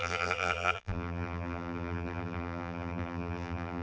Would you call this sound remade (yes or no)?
yes